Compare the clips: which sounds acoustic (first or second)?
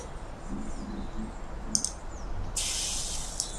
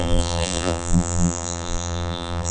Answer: first